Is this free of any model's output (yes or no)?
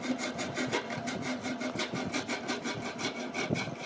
yes